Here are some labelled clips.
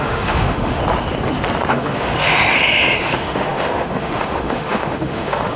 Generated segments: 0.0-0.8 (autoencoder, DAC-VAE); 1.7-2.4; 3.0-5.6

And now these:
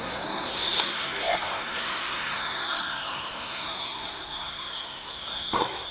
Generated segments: 0.0-5.9 (codec, SNAC)